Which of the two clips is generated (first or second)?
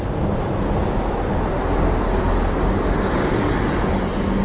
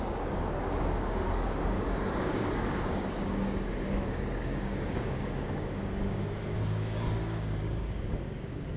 second